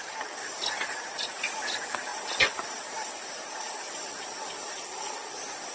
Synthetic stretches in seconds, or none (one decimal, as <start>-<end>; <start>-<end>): none